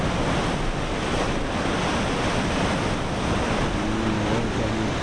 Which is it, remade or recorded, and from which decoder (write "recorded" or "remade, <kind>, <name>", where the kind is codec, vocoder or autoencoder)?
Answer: recorded